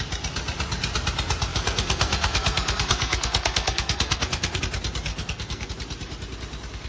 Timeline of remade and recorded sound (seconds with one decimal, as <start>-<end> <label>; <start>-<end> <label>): 0.0-1.5 recorded; 1.5-4.6 remade; 4.6-5.1 recorded; 5.1-5.7 remade; 5.7-6.9 recorded